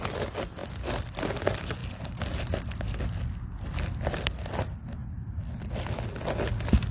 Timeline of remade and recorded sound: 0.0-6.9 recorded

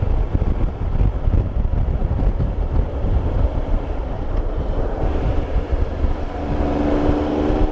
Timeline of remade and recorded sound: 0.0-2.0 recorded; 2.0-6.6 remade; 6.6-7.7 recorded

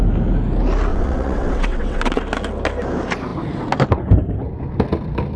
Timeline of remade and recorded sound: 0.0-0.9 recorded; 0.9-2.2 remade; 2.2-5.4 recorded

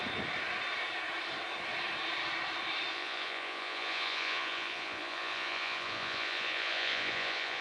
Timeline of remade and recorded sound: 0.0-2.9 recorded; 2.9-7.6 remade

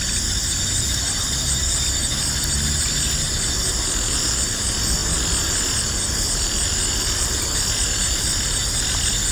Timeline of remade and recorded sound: 0.0-9.3 recorded

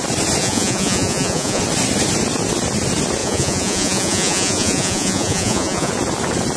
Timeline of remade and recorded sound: 0.0-0.4 recorded; 0.4-1.6 remade; 1.6-3.2 recorded; 3.2-5.9 remade; 5.9-6.6 recorded